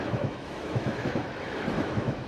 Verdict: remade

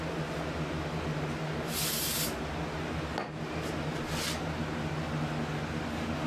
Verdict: recorded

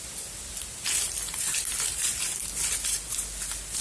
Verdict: recorded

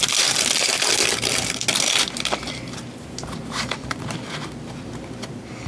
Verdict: recorded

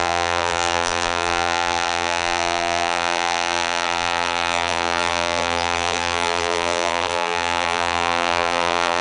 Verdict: remade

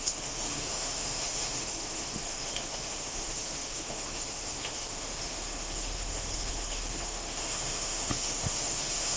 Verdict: remade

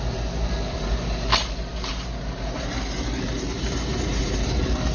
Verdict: remade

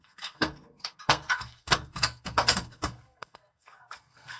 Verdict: remade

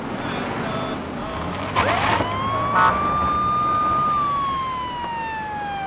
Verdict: recorded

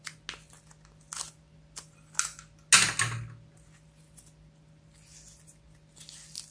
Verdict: recorded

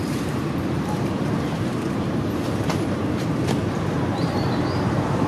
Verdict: remade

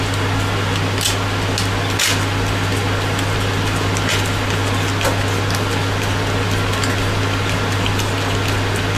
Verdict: recorded